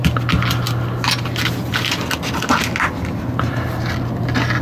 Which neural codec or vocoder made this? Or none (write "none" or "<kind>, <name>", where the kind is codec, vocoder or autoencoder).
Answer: none